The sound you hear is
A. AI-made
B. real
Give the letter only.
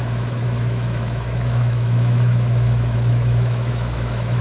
A